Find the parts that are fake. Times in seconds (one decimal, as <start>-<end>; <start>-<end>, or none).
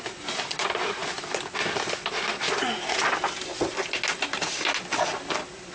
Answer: none